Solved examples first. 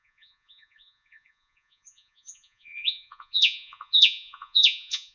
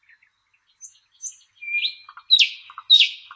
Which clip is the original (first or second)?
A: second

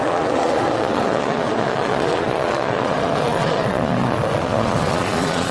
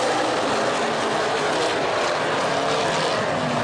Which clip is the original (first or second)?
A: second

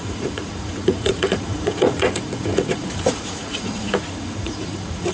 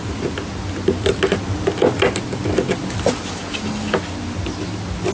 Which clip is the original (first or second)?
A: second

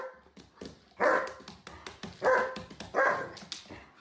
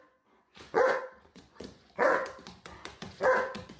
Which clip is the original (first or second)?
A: first